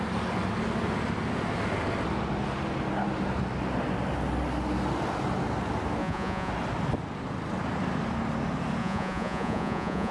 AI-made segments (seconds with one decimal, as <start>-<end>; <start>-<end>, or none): 6.0-6.5; 8.8-10.1